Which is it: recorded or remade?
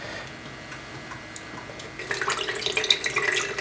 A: recorded